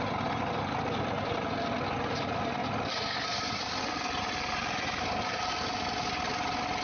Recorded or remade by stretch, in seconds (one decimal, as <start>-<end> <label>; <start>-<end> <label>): 0.0-6.8 recorded